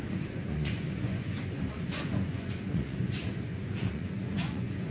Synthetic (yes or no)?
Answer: yes